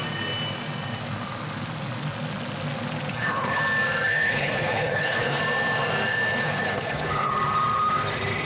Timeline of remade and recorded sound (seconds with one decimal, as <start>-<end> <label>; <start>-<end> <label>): 0.0-3.1 recorded; 3.1-3.6 remade; 3.6-4.1 recorded; 4.1-5.4 remade; 5.4-6.4 recorded; 6.4-7.3 remade; 7.3-8.5 recorded